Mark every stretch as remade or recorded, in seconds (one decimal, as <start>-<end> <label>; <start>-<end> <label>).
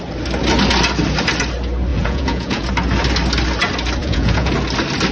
0.0-1.9 recorded; 1.9-2.7 remade; 2.7-4.0 recorded; 4.0-4.5 remade; 4.5-5.1 recorded